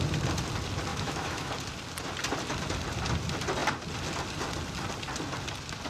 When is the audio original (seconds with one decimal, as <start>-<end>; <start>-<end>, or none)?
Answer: 0.0-0.9; 1.5-5.9